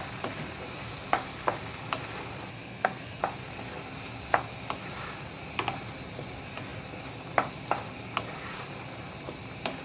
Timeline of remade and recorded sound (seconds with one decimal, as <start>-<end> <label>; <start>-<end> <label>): 0.0-2.5 recorded; 2.5-3.2 remade; 3.2-9.8 recorded